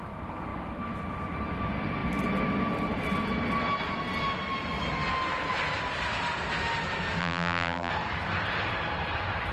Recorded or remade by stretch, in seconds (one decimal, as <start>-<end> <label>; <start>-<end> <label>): 0.0-7.2 recorded; 7.2-7.9 remade; 7.9-9.5 recorded